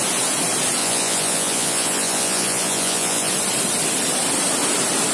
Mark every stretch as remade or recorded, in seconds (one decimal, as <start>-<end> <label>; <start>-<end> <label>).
0.0-0.8 recorded; 0.8-3.3 remade; 3.3-5.1 recorded